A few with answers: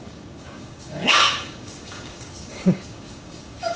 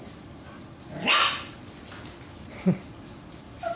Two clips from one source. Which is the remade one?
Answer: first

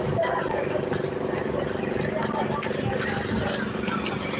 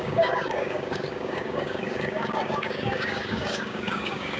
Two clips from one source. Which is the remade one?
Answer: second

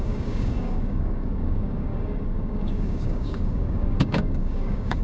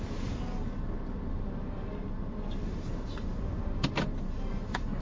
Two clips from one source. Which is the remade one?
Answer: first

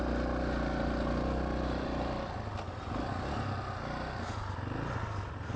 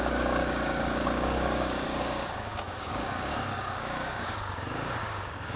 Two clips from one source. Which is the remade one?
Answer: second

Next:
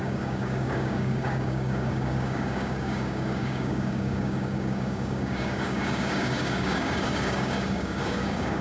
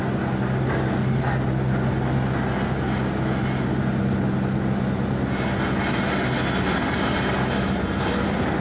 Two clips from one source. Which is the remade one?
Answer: first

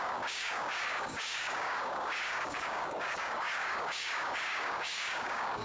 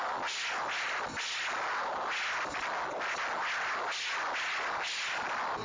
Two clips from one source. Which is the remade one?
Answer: first